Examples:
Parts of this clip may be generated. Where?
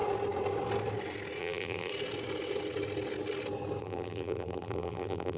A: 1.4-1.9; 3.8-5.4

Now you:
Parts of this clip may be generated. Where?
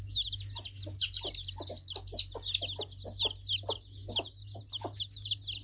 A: none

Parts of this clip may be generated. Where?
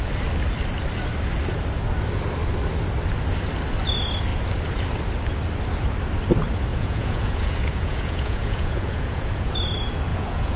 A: 6.7-9.5; 10.1-10.6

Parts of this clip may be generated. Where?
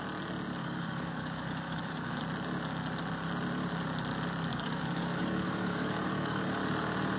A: 0.6-2.2; 4.5-6.6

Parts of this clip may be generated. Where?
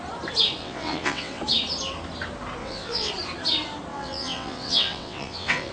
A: 0.6-1.4; 2.6-3.1; 3.9-5.7